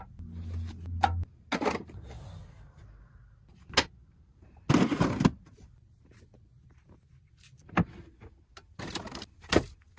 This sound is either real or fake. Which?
real